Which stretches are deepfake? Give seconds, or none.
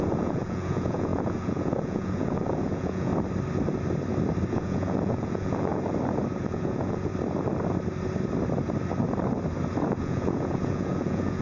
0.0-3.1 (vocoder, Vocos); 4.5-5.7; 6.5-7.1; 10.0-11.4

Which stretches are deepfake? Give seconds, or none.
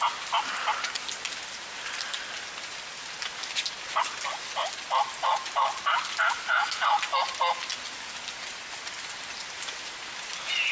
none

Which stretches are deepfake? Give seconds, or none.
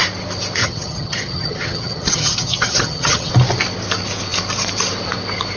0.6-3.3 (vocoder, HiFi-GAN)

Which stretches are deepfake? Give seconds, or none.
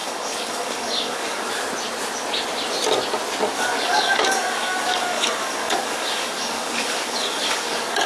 0.0-1.5 (codec, DAC); 3.5-8.1